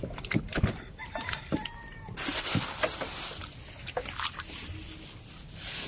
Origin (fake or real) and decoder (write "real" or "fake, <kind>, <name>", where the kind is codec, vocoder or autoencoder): real